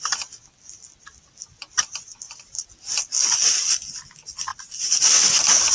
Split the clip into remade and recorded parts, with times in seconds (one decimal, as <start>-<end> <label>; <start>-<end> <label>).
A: 0.0-1.6 recorded; 1.6-2.7 remade; 2.7-4.5 recorded; 4.5-5.0 remade; 5.0-5.7 recorded